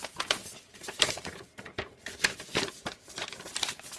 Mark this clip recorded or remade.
remade